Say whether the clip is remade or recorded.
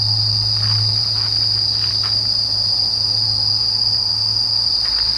recorded